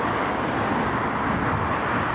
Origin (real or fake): real